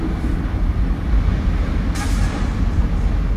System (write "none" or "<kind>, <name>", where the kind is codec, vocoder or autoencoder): none